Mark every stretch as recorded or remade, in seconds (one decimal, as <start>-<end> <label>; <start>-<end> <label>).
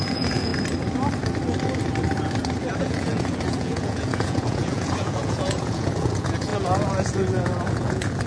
0.0-0.5 remade; 0.5-2.8 recorded; 2.8-8.3 remade